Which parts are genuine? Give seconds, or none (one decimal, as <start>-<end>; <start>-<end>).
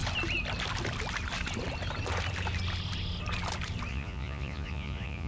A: 0.0-3.9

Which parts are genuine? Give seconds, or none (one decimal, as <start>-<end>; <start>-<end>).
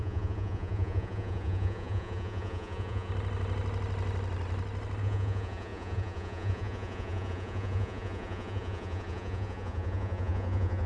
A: 3.1-5.0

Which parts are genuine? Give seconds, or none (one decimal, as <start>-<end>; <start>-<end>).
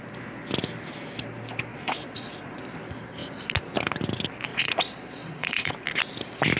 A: 0.0-1.7; 2.6-4.5; 5.7-6.6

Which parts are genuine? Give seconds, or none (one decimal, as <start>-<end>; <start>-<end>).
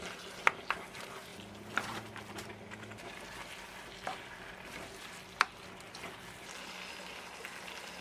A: 0.0-8.0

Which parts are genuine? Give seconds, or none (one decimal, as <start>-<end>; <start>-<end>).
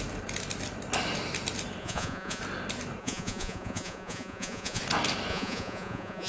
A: 0.0-1.8; 2.4-3.0; 4.8-5.3